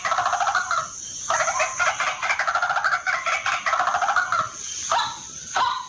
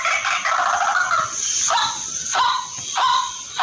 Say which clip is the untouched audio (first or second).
second